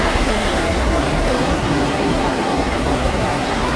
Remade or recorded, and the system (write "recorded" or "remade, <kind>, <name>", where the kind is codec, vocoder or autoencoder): remade, codec, SNAC